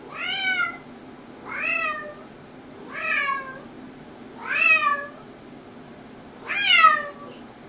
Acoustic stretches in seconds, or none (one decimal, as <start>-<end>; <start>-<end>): 0.0-7.7